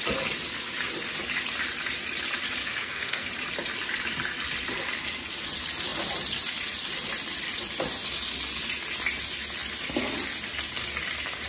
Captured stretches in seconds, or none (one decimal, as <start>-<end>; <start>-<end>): 0.0-2.6; 3.3-11.5